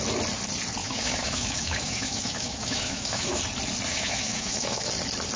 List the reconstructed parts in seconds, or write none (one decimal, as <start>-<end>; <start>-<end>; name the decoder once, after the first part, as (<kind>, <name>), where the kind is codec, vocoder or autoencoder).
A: 0.8-3.4 (autoencoder, DAC-VAE); 3.9-4.9